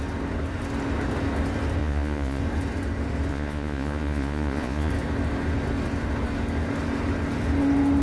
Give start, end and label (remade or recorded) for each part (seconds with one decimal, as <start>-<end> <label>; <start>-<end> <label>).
0.0-1.8 recorded; 1.8-2.4 remade; 2.4-3.3 recorded; 3.3-4.9 remade; 4.9-8.0 recorded